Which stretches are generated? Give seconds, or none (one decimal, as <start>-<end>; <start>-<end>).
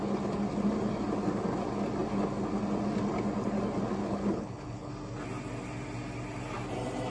4.0-4.9